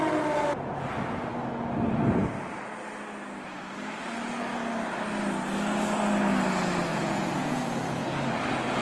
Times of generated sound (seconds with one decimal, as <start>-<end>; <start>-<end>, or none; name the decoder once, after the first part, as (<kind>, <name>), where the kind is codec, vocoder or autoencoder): 6.9-7.6 (vocoder, Vocos)